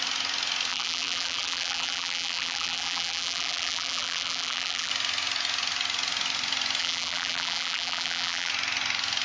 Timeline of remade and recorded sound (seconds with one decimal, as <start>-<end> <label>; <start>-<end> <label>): 0.0-0.7 recorded; 0.7-4.9 remade; 4.9-6.8 recorded; 6.8-8.5 remade; 8.5-9.2 recorded